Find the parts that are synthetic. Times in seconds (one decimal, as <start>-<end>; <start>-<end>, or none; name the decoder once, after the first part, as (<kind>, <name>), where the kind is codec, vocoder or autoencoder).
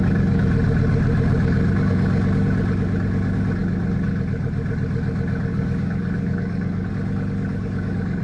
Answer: 5.5-6.9 (codec, DAC); 7.5-8.2